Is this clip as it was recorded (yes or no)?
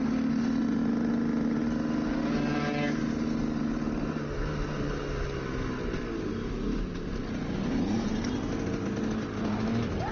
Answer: yes